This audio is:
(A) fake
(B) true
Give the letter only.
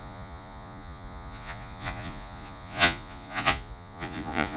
A